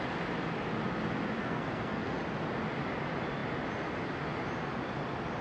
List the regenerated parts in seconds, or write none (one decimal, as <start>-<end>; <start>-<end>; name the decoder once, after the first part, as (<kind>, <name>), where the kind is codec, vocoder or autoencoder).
1.4-2.2 (codec, SNAC)

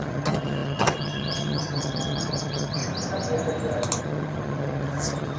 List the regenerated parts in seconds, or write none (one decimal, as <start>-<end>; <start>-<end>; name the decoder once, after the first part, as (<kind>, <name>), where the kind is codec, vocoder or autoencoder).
0.0-2.8 (vocoder, HiFi-GAN); 4.0-5.4